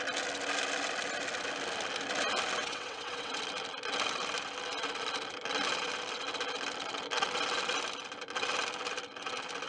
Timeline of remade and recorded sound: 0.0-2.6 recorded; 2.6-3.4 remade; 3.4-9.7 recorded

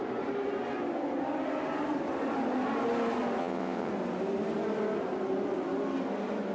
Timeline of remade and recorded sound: 0.0-3.4 recorded; 3.4-3.9 remade; 3.9-6.5 recorded

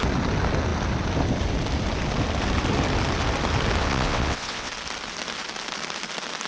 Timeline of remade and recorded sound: 0.0-3.8 recorded; 3.8-4.7 remade; 4.7-6.5 recorded

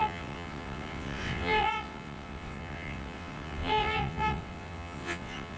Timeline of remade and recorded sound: 0.0-5.6 remade